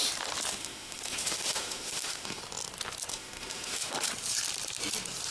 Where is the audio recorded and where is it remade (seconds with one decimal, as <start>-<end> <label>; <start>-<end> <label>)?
0.0-0.5 recorded; 0.5-2.4 remade; 2.4-3.1 recorded; 3.1-3.9 remade; 3.9-5.3 recorded